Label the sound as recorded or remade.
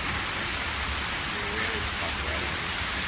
recorded